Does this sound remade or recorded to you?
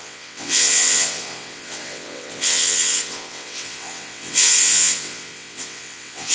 remade